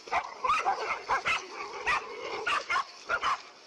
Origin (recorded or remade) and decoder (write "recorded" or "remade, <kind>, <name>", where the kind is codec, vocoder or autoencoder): recorded